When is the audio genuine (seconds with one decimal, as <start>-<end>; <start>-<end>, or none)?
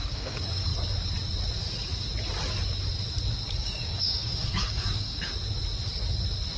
0.7-3.5; 5.3-6.6